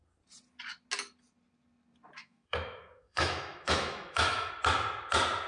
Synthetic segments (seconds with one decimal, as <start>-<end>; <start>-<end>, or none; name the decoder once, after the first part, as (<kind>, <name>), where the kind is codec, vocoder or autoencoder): 2.2-4.5 (autoencoder, DAC-VAE)